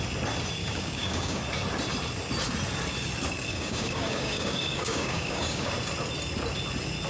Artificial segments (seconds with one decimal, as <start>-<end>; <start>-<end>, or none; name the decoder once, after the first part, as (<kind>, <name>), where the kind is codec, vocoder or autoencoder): 0.6-1.4 (codec, DAC); 3.5-5.7